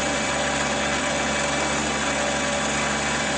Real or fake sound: fake